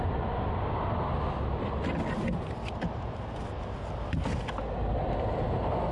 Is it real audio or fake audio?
real